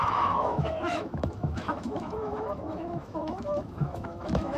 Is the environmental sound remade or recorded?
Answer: remade